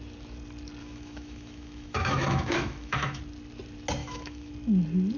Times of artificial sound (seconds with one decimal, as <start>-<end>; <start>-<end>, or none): 0.8-3.2; 4.0-4.5